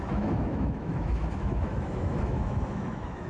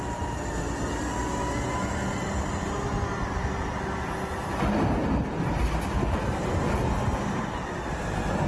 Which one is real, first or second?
second